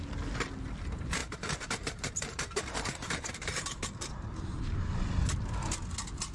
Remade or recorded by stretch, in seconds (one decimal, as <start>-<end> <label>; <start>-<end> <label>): 0.0-1.2 recorded; 1.2-4.6 remade; 4.6-6.3 recorded